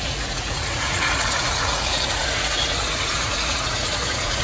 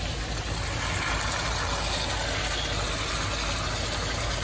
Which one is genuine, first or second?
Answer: second